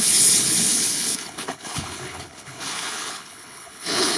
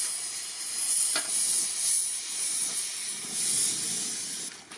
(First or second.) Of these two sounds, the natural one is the second